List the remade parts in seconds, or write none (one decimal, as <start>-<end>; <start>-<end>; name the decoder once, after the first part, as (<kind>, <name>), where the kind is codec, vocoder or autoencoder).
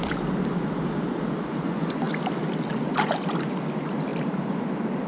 1.5-2.1 (vocoder, Vocos)